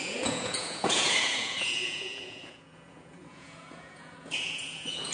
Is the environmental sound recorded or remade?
remade